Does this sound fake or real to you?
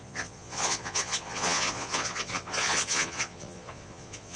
fake